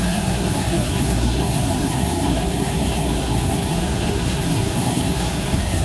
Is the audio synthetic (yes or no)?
yes